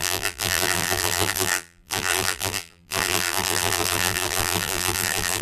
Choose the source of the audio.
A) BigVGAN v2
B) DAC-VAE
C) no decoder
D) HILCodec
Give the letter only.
A